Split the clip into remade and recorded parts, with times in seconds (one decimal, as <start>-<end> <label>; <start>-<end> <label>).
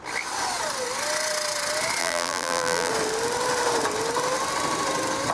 0.0-2.0 recorded; 2.0-2.9 remade; 2.9-5.3 recorded